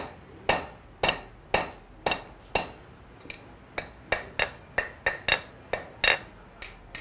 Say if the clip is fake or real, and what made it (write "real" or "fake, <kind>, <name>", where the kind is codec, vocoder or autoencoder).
real